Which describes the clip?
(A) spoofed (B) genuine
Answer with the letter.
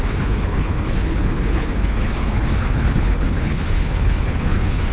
A